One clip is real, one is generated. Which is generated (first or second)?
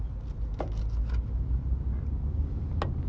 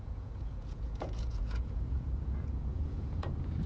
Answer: second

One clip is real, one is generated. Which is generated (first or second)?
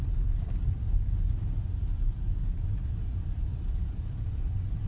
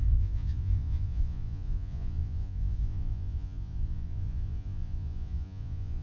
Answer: second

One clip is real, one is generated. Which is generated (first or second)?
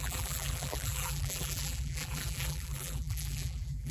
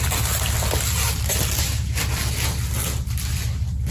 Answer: first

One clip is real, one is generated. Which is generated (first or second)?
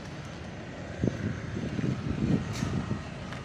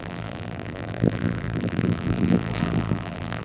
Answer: second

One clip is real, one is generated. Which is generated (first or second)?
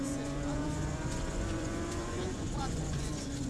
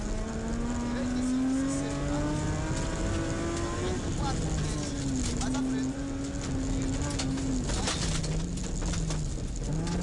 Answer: first